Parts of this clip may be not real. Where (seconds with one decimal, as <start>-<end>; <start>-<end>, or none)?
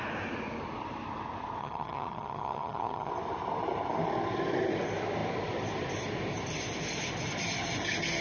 1.6-3.1